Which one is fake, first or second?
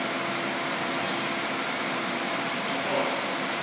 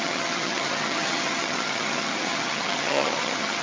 second